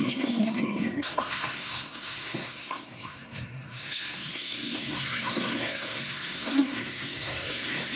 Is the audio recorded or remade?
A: remade